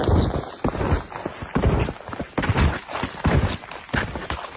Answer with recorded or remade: recorded